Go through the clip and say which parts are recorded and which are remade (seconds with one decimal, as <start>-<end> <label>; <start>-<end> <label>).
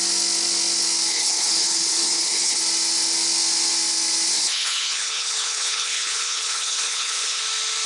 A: 0.0-1.1 recorded; 1.1-2.6 remade; 2.6-4.3 recorded; 4.3-7.4 remade; 7.4-7.9 recorded